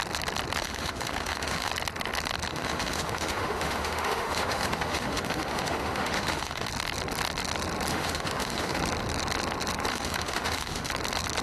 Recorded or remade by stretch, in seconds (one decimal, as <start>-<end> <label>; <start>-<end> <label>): 0.0-0.6 recorded; 0.6-1.7 remade; 1.7-2.5 recorded; 2.5-6.7 remade; 6.7-7.9 recorded; 7.9-8.8 remade; 8.8-9.9 recorded; 9.9-10.9 remade; 10.9-11.4 recorded